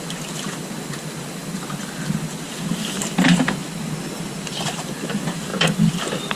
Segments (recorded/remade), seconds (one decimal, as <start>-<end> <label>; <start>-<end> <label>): 0.0-3.6 recorded; 3.6-4.8 remade; 4.8-5.5 recorded; 5.5-6.4 remade